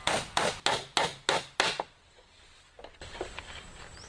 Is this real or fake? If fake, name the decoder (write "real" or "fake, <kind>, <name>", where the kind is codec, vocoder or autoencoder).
real